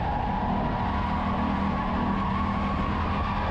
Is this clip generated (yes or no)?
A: no